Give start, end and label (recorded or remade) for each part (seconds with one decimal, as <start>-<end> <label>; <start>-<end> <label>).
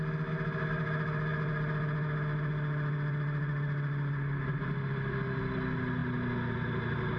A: 0.0-7.2 recorded